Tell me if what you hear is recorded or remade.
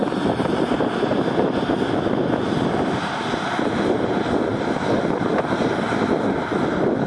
recorded